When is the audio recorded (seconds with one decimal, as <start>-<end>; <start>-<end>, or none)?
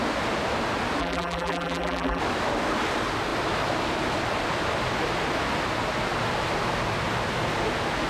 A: 0.0-1.0; 2.2-8.1